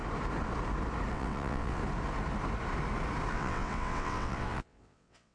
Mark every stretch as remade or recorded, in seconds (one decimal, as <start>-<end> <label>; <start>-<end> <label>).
0.0-1.1 recorded; 1.1-1.8 remade; 1.8-3.3 recorded; 3.3-5.3 remade